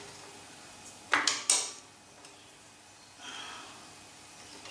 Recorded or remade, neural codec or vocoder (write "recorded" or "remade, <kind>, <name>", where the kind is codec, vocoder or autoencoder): recorded